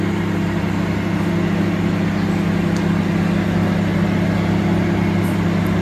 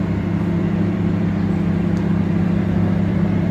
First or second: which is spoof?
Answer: second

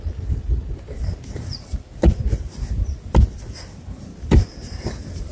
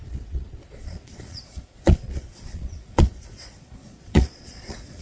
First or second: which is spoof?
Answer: second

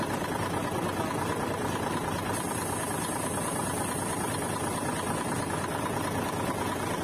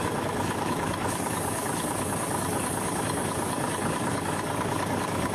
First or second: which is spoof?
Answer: second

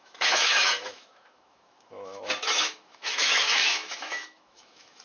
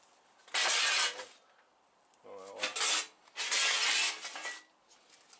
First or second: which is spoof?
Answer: first